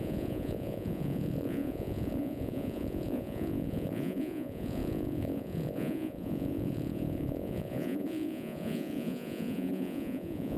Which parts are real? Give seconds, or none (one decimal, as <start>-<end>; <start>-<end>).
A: none